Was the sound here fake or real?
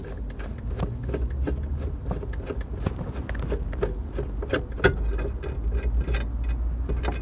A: real